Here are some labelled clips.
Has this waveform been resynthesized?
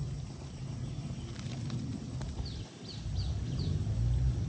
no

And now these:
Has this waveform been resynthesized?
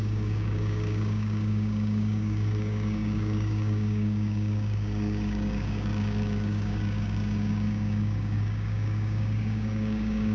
yes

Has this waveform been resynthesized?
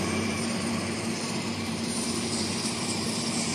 yes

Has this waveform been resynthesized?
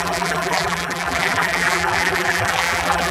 yes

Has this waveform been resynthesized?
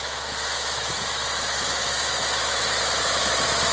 yes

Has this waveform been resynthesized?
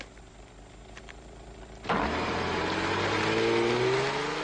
no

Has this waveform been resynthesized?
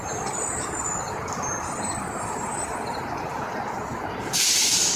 no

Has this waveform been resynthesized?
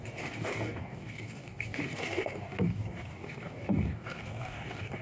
yes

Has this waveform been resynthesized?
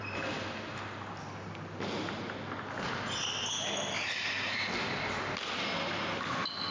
no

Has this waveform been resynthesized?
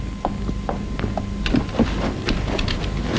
no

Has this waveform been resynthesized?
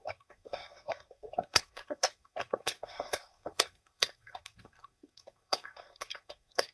yes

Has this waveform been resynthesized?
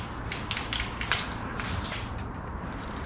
no